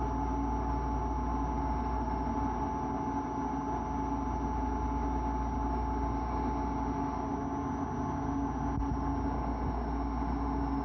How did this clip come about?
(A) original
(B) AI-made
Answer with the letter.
A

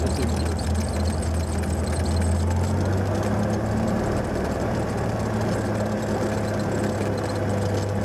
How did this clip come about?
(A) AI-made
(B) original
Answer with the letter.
B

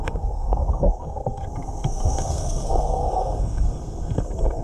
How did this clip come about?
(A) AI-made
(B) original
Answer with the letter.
A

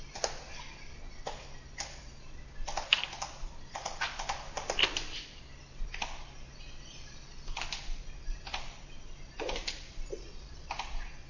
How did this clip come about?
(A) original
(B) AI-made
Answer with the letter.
A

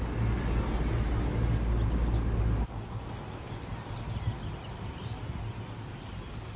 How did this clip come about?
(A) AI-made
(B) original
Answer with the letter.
B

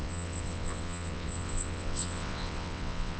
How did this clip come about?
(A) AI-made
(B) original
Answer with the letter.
A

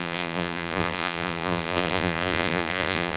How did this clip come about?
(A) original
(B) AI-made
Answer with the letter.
B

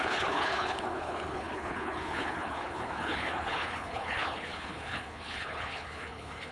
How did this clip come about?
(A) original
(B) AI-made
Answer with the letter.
B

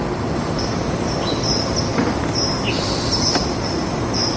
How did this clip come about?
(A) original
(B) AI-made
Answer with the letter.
A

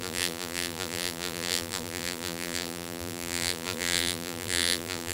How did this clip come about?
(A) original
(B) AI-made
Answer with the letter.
B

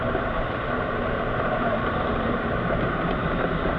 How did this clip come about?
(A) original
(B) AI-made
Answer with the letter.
B